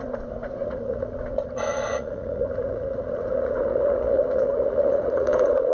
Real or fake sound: fake